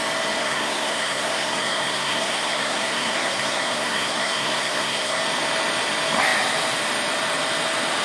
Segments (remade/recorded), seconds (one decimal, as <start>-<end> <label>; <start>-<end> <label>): 0.0-0.4 recorded; 0.4-5.2 remade; 5.2-8.0 recorded